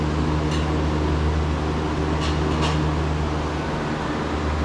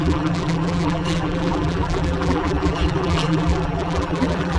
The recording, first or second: first